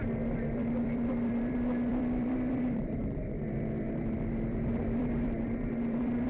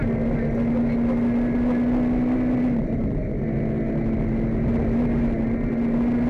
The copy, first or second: first